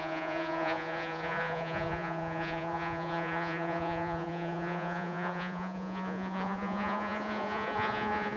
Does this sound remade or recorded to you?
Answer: remade